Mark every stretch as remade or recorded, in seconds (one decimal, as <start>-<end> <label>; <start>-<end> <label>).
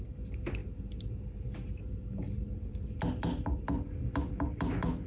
0.0-5.1 recorded